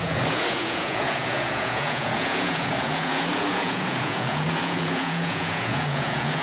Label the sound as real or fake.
fake